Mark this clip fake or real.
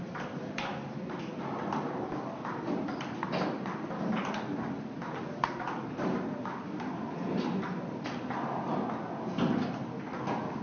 real